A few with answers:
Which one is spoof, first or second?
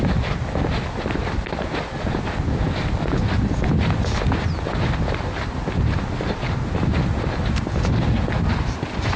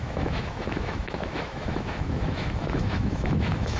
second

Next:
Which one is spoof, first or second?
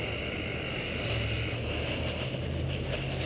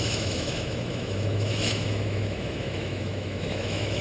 second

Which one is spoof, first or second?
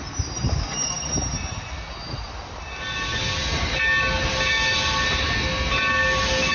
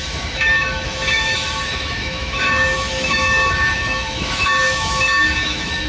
second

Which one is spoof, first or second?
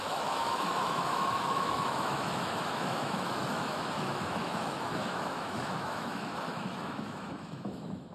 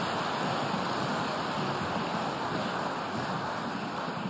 first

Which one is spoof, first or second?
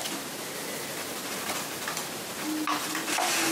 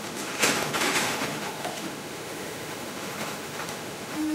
second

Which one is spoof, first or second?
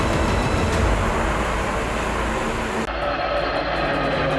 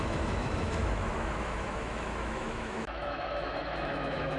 second